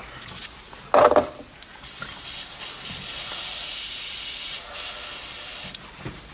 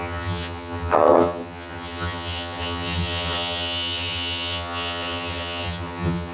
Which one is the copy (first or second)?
second